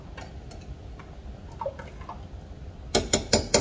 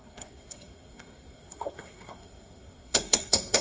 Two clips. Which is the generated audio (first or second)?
second